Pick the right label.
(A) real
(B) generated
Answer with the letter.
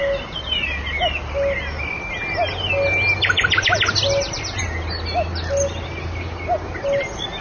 A